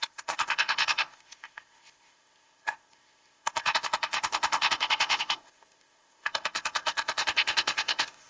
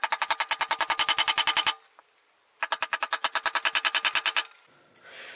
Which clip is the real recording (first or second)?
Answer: second